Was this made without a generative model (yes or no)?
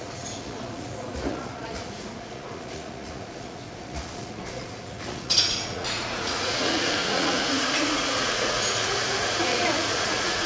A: no